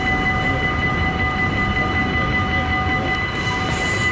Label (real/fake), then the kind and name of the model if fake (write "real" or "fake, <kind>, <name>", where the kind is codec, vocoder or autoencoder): real